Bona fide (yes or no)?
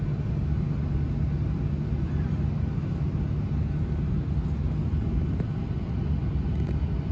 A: yes